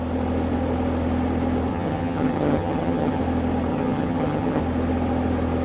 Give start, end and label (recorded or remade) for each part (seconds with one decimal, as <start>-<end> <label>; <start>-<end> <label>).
0.0-1.7 recorded; 1.7-3.2 remade; 3.2-3.7 recorded; 3.7-4.6 remade; 4.6-5.6 recorded